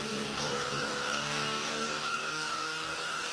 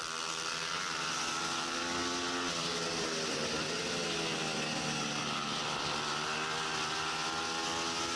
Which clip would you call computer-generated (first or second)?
first